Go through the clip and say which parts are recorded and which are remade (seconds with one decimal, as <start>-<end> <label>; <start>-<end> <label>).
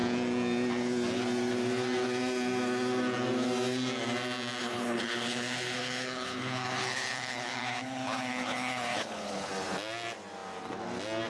0.0-4.6 recorded; 4.6-9.5 remade; 9.5-11.3 recorded